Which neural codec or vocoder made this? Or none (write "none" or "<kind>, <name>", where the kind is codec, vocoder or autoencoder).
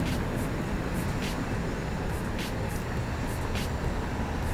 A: none